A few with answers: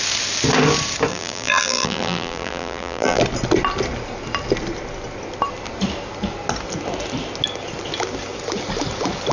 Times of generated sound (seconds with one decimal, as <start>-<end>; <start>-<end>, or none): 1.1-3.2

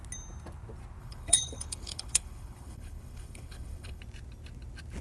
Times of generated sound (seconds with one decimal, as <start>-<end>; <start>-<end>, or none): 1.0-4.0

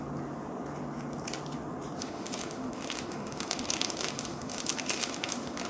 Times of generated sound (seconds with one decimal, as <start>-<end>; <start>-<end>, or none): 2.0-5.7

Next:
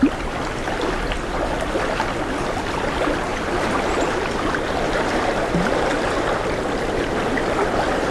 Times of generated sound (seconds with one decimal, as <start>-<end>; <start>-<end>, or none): none